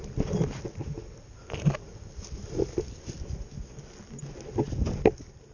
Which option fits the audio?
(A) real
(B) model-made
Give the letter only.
A